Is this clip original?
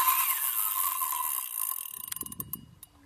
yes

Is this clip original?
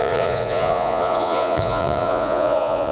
no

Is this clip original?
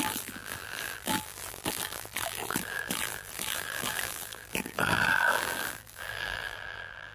no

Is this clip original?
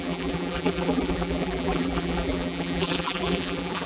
no